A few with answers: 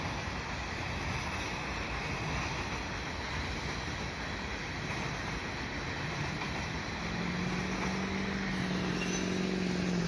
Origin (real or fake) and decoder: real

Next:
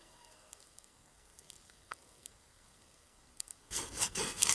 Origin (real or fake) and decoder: fake, codec, SNAC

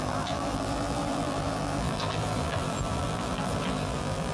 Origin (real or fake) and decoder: fake, vocoder, BigVGAN v2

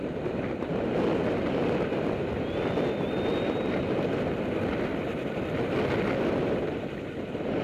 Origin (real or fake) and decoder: real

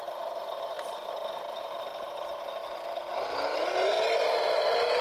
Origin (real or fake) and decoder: real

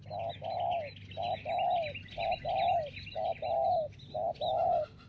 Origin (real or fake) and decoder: real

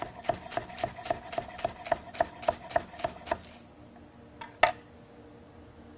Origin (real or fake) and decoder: real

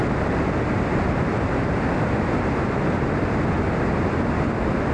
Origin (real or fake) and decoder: real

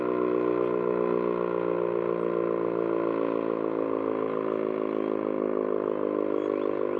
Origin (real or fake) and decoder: real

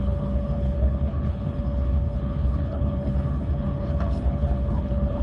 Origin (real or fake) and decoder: fake, codec, HILCodec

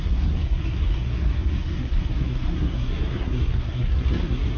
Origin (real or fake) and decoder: fake, codec, SNAC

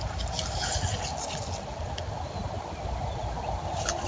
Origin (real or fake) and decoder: real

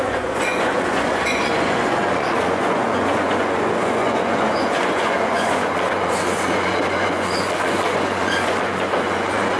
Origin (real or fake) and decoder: fake, vocoder, Vocos